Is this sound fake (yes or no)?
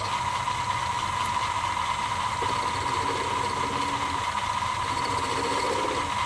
no